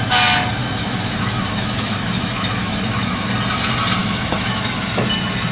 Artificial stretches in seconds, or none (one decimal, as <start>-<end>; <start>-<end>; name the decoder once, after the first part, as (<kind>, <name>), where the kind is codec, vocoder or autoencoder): 0.6-3.3 (autoencoder, DAC-VAE); 4.0-5.0